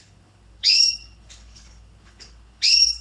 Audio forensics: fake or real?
fake